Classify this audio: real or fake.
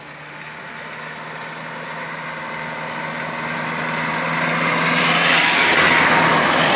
real